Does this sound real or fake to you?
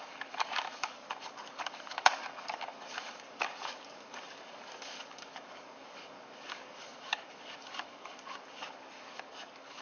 fake